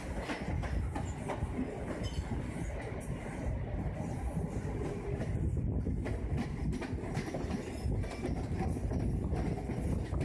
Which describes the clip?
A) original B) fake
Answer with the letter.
A